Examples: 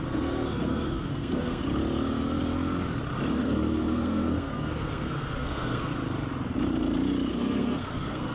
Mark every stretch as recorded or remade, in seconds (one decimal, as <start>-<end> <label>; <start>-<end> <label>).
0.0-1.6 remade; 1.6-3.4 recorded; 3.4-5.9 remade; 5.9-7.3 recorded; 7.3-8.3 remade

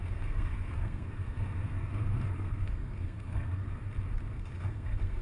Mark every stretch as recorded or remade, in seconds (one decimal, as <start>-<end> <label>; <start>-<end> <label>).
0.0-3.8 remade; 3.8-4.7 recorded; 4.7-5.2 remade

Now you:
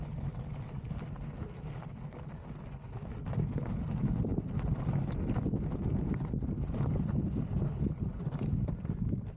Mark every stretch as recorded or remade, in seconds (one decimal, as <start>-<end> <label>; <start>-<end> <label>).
0.0-9.4 recorded

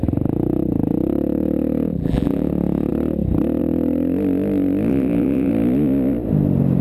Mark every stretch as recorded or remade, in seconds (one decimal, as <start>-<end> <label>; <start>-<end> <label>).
0.0-1.9 recorded; 1.9-2.5 remade; 2.5-4.9 recorded; 4.9-5.5 remade; 5.5-6.8 recorded